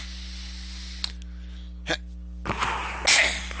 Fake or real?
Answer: real